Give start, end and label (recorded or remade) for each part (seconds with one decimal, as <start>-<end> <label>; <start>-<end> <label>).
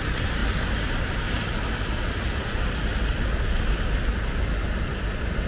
0.0-5.5 recorded